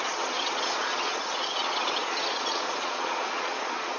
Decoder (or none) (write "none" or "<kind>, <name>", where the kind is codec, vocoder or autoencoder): vocoder, Vocos